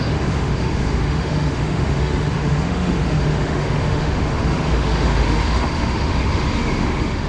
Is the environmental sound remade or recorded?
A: remade